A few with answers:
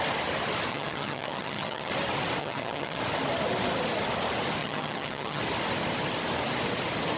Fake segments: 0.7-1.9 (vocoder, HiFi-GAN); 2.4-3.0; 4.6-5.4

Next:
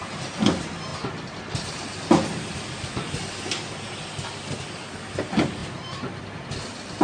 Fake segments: none

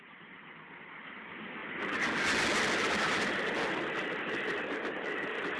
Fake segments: none

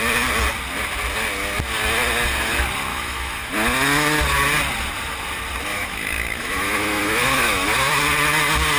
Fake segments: 2.9-3.5 (autoencoder, DAC-VAE); 5.7-7.9

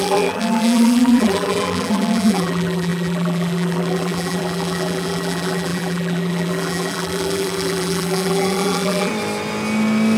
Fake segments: 0.0-9.1 (vocoder, BigVGAN v2)

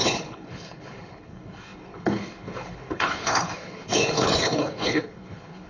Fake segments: 0.0-5.7 (codec, HILCodec)